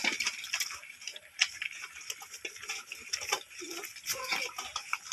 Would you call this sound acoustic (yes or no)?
yes